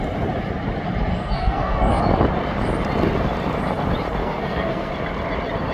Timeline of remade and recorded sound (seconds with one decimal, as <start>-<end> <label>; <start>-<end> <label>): 0.0-1.1 recorded; 1.1-2.0 remade; 2.0-4.2 recorded; 4.2-4.9 remade; 4.9-5.7 recorded